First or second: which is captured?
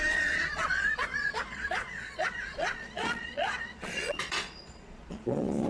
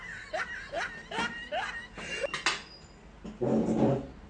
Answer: second